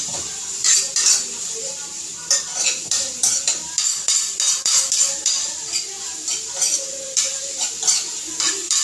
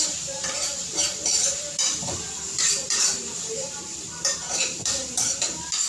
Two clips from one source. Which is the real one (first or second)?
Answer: first